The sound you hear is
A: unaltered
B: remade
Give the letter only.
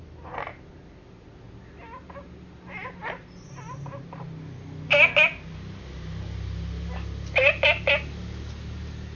A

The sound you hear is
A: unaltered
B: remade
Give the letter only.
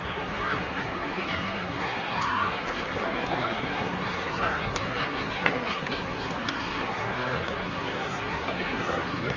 B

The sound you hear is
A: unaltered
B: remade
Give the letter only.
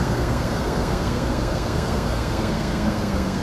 B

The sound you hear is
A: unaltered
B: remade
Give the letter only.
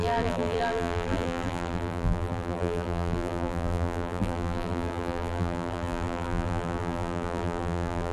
B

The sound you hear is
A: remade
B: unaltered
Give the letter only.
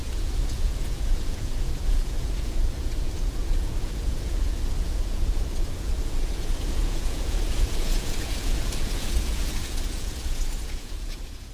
A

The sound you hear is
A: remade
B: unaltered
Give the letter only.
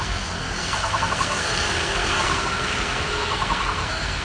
A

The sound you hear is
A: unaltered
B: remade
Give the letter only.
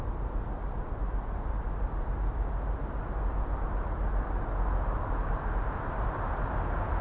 A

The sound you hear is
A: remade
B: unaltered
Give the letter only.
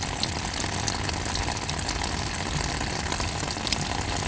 B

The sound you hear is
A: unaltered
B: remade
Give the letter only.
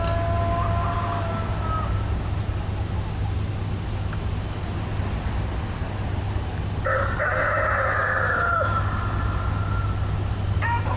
A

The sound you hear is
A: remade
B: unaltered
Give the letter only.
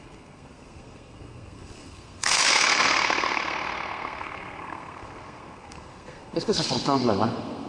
A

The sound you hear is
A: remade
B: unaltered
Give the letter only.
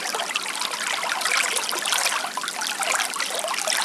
B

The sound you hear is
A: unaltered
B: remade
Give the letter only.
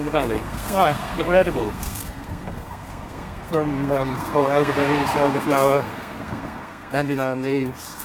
B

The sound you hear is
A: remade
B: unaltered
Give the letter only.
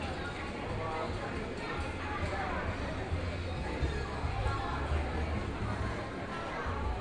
B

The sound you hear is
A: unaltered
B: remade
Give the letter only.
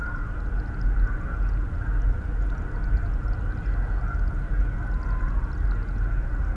A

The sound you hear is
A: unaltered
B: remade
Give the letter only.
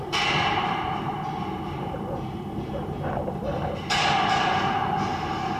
B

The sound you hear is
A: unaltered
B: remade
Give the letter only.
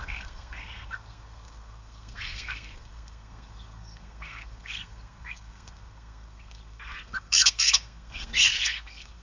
B